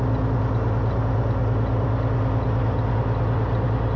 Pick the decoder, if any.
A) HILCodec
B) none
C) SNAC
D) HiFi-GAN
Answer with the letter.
B